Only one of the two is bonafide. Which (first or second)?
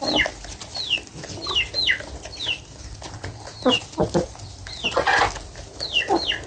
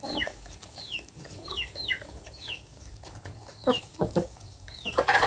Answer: first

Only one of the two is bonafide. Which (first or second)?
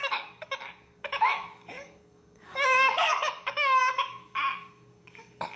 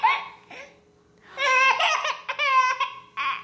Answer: second